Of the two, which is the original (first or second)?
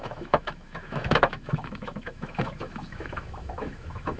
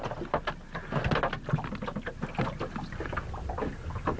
second